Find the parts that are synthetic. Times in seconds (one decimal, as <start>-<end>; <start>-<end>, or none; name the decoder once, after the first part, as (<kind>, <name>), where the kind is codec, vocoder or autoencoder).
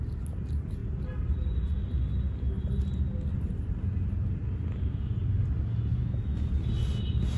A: 5.9-6.4 (autoencoder, DAC-VAE)